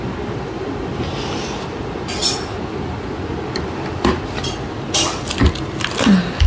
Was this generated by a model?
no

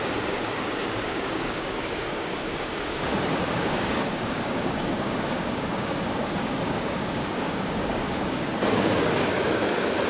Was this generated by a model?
yes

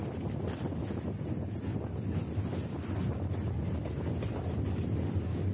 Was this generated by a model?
no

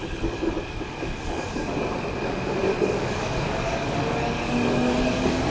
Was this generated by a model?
yes